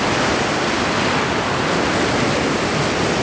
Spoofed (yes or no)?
no